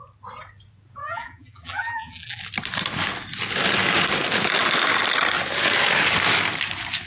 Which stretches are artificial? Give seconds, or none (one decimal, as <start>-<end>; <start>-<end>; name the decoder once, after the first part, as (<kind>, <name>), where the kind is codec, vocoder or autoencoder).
1.0-2.4 (vocoder, BigVGAN v2)

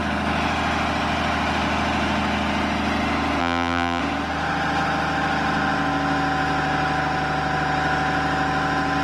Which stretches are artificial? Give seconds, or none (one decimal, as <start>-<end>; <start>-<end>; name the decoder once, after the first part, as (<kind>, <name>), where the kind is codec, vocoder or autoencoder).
3.4-4.0 (vocoder, BigVGAN v2)

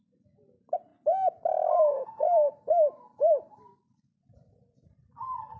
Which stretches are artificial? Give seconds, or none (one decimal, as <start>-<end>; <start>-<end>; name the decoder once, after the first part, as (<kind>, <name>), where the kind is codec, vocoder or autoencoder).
none

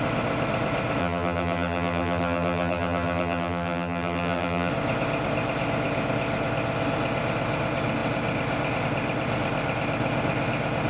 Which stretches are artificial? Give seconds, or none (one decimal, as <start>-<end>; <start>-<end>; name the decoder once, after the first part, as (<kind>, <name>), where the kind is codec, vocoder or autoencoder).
1.0-4.7 (vocoder, BigVGAN v2)

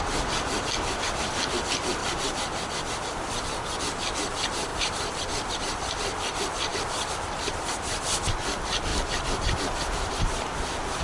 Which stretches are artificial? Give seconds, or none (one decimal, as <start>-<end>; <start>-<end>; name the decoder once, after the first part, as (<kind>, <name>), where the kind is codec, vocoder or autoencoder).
0.0-2.0 (vocoder, BigVGAN v2); 3.8-11.0

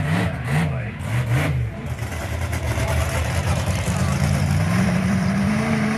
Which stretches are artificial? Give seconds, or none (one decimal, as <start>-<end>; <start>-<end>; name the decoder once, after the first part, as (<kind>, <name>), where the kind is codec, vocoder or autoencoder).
2.1-6.0 (vocoder, BigVGAN v2)

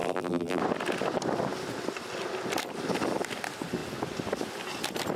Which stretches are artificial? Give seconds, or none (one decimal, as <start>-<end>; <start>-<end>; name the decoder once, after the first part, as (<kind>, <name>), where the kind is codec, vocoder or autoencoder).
0.0-0.6 (vocoder, BigVGAN v2)

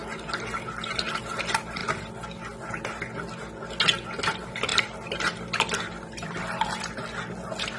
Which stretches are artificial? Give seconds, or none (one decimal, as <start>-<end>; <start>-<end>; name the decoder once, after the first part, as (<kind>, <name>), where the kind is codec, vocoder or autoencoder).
0.0-1.8 (vocoder, BigVGAN v2); 4.2-7.8